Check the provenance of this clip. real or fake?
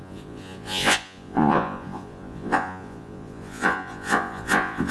fake